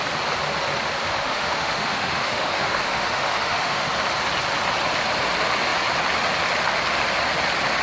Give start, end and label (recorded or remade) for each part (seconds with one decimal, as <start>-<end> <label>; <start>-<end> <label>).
0.0-1.0 recorded; 1.0-3.9 remade; 3.9-7.8 recorded